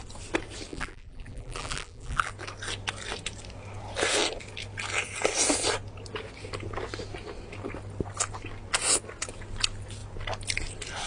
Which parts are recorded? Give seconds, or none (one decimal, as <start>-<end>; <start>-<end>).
0.0-0.7; 2.3-11.1